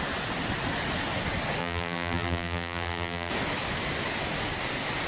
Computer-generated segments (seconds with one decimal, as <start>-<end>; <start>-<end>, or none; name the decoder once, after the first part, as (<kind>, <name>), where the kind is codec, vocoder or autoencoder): 1.6-3.3 (vocoder, BigVGAN v2)